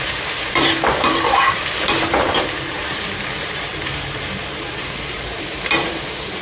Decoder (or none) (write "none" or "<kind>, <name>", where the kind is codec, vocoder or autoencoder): vocoder, BigVGAN v2